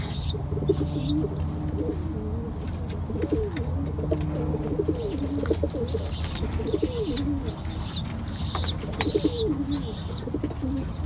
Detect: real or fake real